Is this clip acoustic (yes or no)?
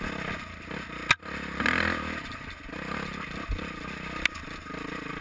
yes